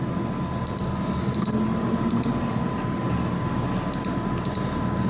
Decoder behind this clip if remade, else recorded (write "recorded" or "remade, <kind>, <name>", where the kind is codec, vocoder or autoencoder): recorded